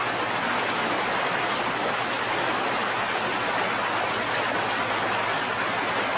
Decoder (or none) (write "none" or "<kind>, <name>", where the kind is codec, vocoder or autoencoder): none